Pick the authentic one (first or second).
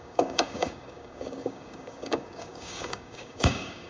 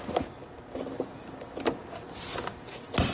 second